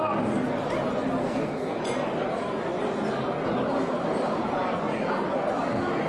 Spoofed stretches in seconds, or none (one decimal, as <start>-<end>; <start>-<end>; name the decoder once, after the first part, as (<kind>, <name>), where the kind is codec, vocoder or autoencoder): 1.2-1.8 (codec, SNAC)